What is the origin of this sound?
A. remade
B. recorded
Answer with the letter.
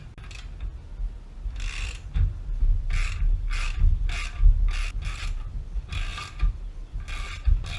B